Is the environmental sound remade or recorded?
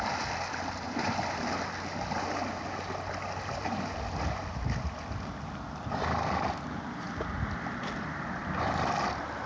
recorded